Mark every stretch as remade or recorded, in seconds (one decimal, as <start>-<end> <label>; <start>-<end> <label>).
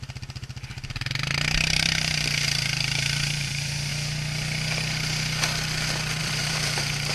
0.0-3.9 remade; 3.9-6.2 recorded; 6.2-7.1 remade